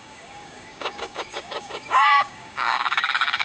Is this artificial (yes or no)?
yes